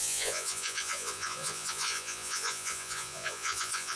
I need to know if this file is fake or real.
fake